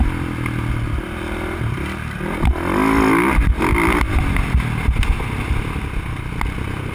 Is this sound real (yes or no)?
yes